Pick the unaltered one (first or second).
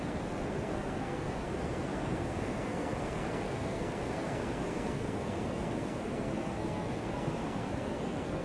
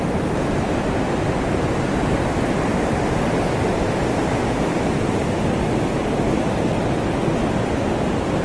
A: second